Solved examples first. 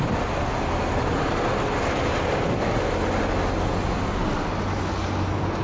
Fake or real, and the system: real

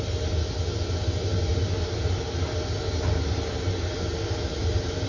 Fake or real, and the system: real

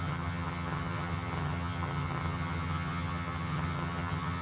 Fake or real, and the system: fake, vocoder, HiFi-GAN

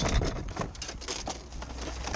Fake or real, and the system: real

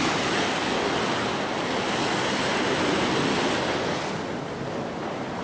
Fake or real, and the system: real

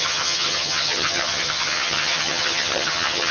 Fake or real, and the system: fake, vocoder, HiFi-GAN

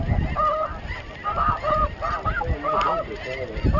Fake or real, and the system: real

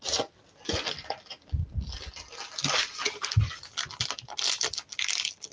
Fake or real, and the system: real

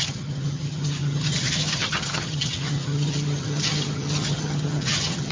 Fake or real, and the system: fake, vocoder, HiFi-GAN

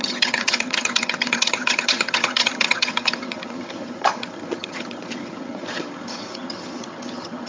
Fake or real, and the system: fake, vocoder, HiFi-GAN